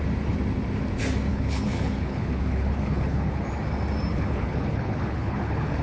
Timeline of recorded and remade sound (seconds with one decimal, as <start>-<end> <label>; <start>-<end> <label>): 0.0-1.3 recorded; 1.3-3.5 remade; 3.5-4.1 recorded; 4.1-5.8 remade